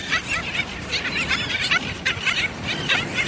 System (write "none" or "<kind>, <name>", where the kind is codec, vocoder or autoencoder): none